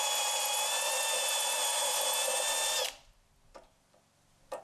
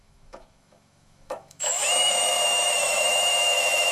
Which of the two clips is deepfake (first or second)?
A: second